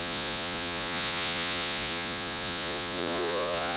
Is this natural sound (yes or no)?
no